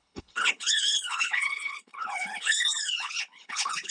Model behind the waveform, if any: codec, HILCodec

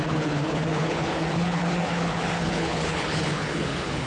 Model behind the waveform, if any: codec, HILCodec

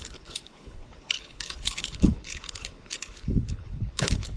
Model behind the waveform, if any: codec, HILCodec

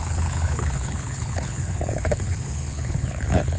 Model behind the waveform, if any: codec, HILCodec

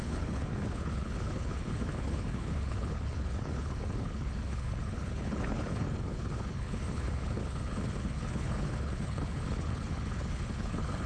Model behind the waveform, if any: codec, HILCodec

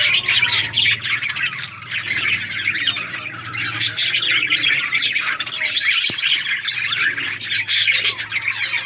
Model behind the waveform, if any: none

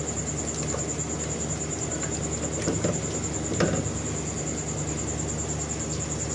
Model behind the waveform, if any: none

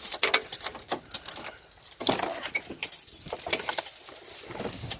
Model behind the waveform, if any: none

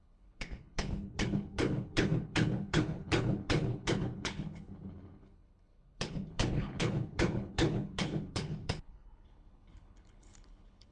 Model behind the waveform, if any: codec, HILCodec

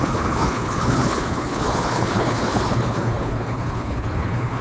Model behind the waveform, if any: codec, HILCodec